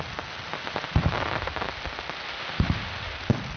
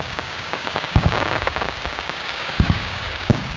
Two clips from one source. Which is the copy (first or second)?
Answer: second